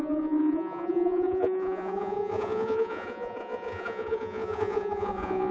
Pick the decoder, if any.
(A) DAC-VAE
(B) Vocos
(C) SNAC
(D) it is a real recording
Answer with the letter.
B